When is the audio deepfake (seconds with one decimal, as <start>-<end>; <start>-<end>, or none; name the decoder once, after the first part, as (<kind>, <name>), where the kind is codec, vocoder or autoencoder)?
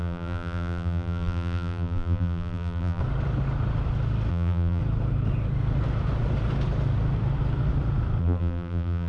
0.0-3.0 (vocoder, BigVGAN v2); 4.3-4.8; 8.2-9.1